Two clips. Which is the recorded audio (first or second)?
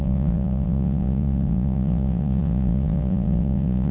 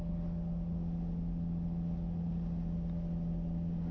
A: second